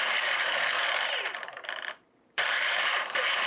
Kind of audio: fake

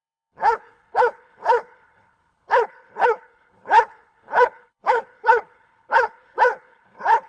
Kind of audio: fake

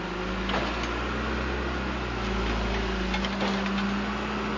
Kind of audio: real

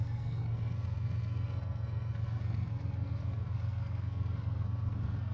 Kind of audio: fake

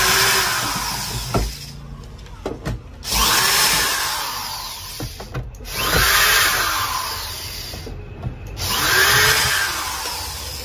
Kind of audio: real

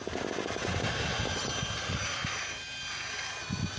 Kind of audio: real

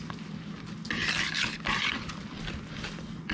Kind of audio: real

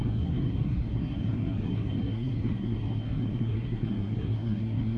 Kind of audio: fake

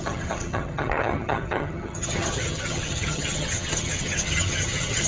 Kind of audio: fake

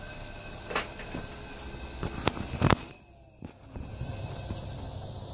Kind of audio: real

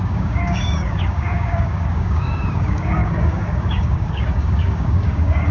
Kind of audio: fake